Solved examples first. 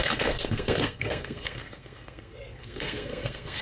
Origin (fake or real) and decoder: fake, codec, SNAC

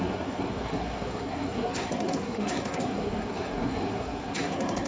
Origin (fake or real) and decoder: fake, codec, SNAC